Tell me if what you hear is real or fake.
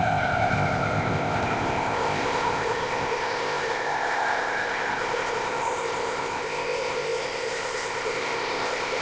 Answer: fake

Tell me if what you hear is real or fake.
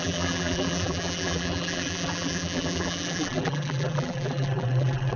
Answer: fake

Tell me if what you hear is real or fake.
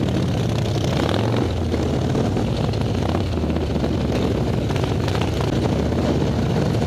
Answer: real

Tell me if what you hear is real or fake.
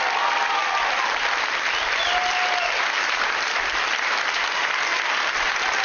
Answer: real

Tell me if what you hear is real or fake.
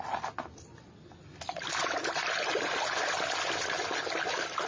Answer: real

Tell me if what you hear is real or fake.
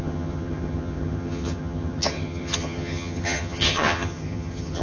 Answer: fake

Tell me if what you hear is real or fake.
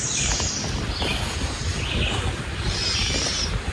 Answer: real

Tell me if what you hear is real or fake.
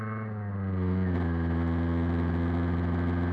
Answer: real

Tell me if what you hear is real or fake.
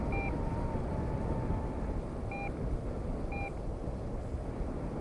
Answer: real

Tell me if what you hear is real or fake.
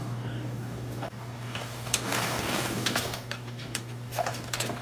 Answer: fake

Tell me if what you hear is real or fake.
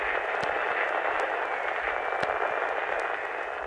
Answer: real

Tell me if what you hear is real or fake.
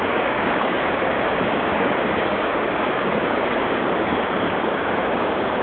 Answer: fake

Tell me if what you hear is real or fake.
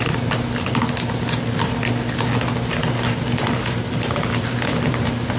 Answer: real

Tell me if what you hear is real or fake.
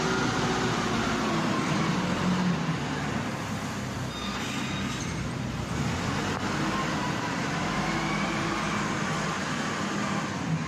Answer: real